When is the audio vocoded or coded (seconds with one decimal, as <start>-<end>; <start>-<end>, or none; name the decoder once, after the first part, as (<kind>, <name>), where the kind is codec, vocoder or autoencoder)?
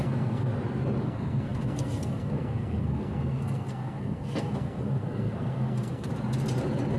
0.0-0.5 (codec, SNAC); 1.0-6.1